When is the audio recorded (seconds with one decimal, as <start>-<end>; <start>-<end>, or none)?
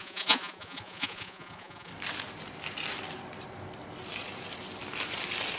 1.9-5.6